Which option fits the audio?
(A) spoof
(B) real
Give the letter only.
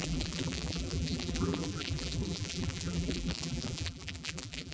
A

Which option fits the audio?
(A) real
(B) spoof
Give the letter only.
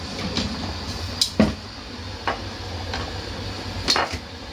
A